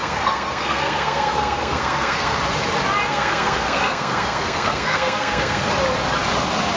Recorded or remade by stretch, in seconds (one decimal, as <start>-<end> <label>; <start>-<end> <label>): 0.0-2.4 remade; 2.4-3.1 recorded; 3.1-5.7 remade; 5.7-6.8 recorded